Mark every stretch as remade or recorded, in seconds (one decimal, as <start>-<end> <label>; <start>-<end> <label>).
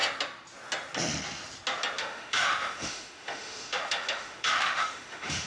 0.0-2.0 recorded; 2.0-5.5 remade